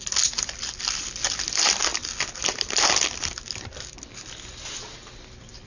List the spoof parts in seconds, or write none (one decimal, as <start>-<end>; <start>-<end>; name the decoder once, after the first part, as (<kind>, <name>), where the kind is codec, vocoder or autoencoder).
none